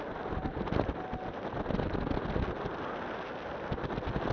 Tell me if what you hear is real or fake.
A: real